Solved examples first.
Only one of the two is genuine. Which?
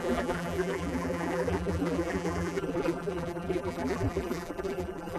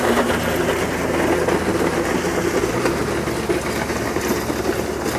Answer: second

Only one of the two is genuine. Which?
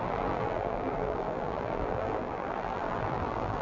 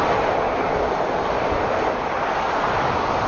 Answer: second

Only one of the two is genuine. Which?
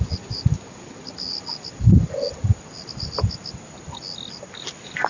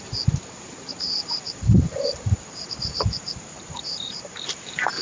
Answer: first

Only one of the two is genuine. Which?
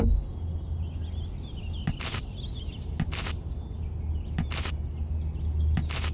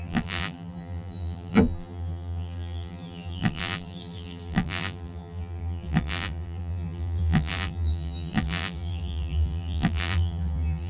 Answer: first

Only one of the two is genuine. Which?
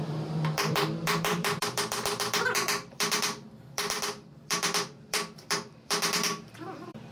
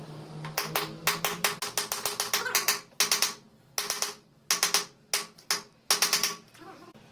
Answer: second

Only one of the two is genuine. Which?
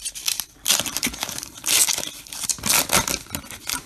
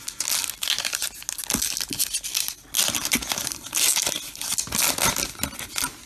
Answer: second